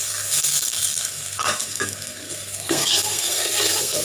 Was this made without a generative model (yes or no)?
no